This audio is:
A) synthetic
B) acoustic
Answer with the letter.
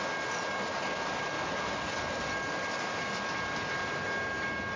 B